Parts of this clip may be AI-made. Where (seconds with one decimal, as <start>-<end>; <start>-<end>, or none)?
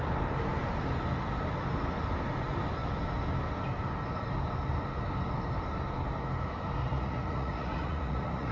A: 6.8-8.5